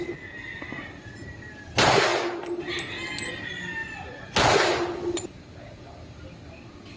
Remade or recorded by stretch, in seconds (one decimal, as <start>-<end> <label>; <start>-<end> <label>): 0.0-3.8 recorded; 3.8-5.3 remade; 5.3-7.0 recorded